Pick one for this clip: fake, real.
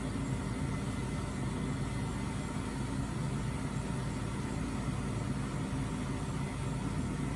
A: real